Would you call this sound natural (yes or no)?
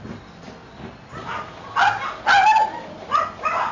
yes